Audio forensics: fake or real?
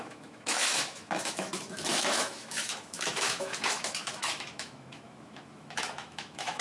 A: fake